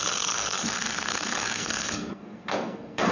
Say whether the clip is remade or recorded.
remade